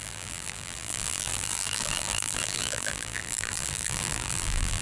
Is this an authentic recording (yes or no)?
no